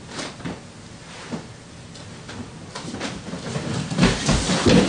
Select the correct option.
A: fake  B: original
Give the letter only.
B